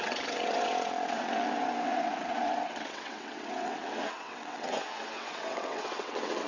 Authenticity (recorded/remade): remade